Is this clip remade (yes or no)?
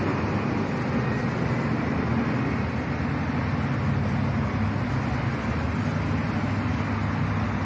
no